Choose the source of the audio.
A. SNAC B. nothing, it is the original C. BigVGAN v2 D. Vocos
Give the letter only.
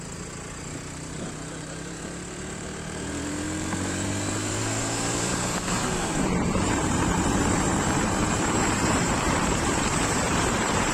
C